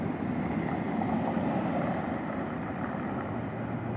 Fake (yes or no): no